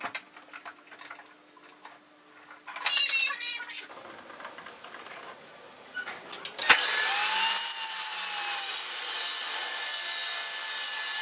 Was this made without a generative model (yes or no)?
yes